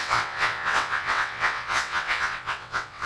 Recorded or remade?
remade